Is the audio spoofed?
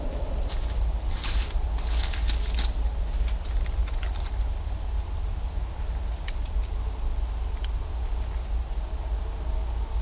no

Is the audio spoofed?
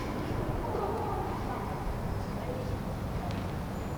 no